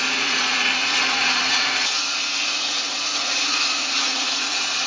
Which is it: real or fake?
fake